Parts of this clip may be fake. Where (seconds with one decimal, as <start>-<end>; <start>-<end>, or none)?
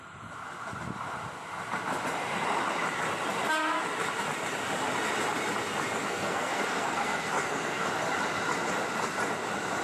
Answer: 6.0-7.9